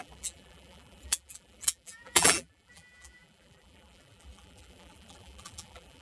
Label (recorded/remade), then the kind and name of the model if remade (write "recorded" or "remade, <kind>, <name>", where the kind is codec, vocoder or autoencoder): remade, vocoder, BigVGAN v2